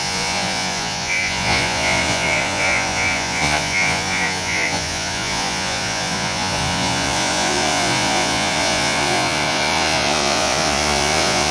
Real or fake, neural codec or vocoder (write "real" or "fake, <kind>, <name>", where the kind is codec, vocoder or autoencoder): fake, vocoder, Vocos